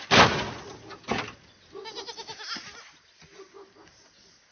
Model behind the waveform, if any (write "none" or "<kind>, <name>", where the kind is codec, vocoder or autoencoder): none